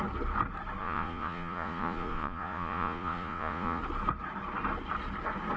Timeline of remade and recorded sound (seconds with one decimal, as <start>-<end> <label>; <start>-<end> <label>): 0.0-0.8 recorded; 0.8-3.8 remade; 3.8-5.6 recorded